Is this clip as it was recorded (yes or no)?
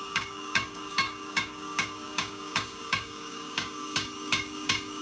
no